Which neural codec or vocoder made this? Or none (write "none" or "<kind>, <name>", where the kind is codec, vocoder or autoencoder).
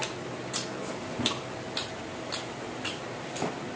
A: none